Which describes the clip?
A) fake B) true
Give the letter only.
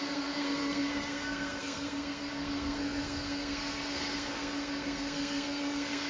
A